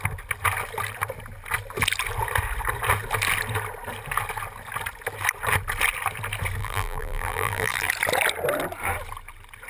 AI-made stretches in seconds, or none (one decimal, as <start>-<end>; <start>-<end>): 6.6-7.9